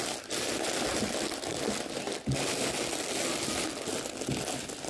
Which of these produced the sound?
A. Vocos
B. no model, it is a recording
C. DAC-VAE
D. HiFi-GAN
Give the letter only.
B